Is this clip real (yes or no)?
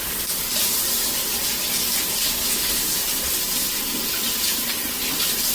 yes